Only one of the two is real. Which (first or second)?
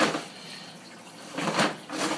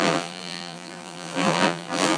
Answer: first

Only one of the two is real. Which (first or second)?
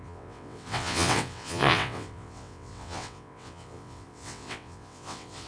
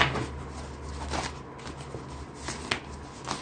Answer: second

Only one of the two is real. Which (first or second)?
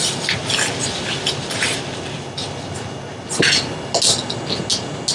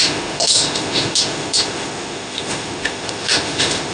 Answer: first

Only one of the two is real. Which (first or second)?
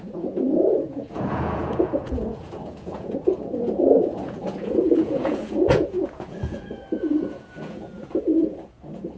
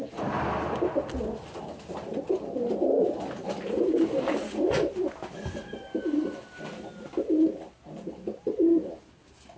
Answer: second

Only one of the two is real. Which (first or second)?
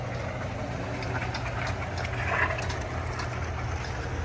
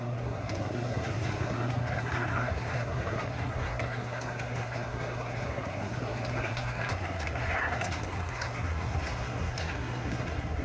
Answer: first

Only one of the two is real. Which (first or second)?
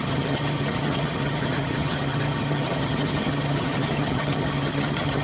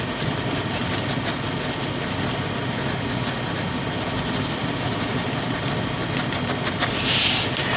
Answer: second